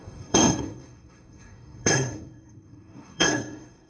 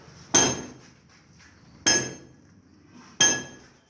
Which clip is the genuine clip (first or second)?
second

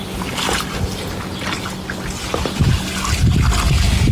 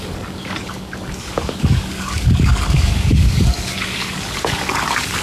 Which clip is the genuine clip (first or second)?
first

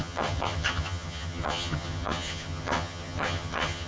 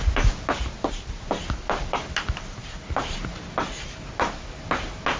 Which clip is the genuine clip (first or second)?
second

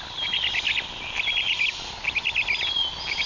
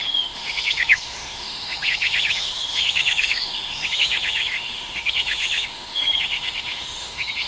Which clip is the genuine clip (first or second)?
first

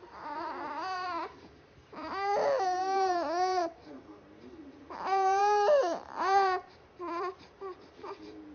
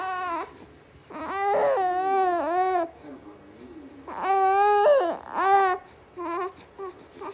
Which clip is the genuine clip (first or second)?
second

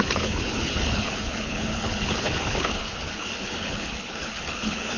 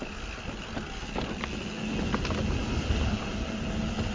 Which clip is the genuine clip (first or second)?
second